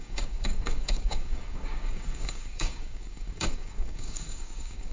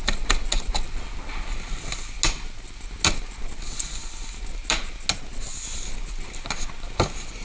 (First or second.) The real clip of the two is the second